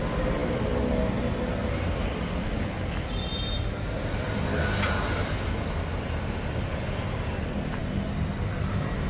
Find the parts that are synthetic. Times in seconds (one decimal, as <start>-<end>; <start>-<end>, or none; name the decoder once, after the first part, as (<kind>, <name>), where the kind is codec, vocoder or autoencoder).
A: none